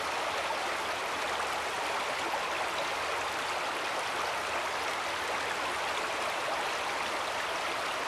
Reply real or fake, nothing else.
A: real